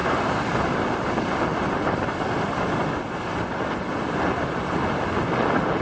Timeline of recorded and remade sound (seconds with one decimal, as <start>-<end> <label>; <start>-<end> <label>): 0.0-5.8 recorded